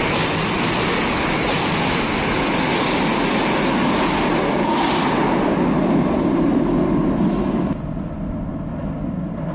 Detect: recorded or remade recorded